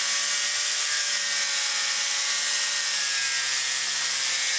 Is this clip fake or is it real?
real